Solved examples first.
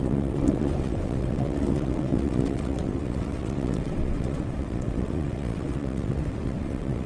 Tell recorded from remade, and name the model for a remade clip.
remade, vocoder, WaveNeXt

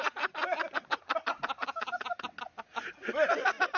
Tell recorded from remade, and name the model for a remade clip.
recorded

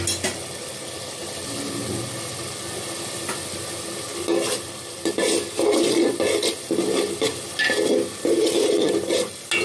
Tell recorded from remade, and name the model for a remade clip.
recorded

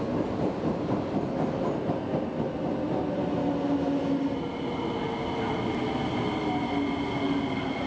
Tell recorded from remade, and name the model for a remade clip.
recorded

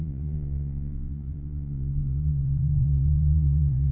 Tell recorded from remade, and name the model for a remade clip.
remade, vocoder, Vocos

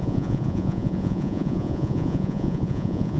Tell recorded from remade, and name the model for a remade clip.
remade, vocoder, Vocos